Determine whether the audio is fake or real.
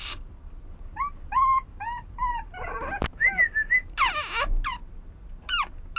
real